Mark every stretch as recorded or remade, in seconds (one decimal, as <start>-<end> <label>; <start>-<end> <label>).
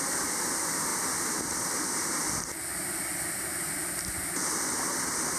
0.0-5.4 recorded